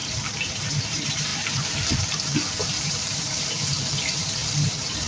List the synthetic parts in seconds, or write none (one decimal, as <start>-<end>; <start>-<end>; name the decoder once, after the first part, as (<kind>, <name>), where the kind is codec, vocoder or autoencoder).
0.0-5.1 (vocoder, BigVGAN v2)